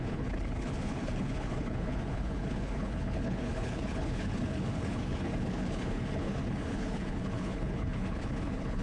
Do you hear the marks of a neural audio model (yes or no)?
yes